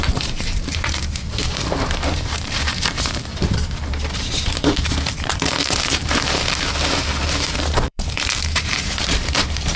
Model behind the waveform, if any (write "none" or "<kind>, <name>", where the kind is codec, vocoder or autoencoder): vocoder, BigVGAN v2